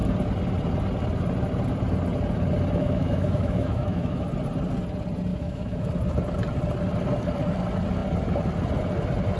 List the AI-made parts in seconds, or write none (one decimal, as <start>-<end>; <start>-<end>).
2.8-4.2; 5.3-5.9